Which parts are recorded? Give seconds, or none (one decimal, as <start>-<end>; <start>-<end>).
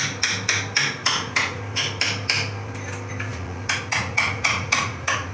0.0-1.0; 1.6-3.3